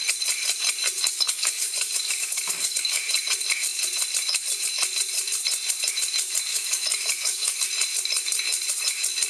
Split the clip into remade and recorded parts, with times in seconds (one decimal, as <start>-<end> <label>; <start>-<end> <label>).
0.0-1.1 recorded; 1.1-3.0 remade; 3.0-6.5 recorded; 6.5-7.6 remade; 7.6-9.3 recorded